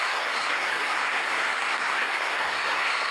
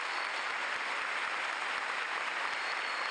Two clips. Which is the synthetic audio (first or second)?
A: first